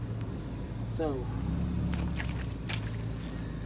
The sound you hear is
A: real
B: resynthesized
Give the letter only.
A